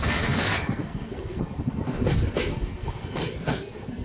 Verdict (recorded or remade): remade